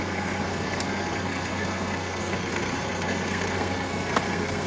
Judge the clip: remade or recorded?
remade